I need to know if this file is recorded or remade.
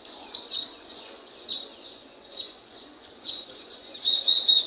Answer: remade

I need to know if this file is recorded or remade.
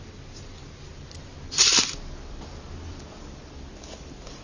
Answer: recorded